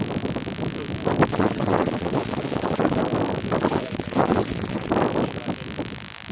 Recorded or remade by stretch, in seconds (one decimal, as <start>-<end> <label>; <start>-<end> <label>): 0.0-1.3 recorded; 1.3-3.0 remade; 3.0-3.6 recorded; 3.6-4.9 remade; 4.9-6.3 recorded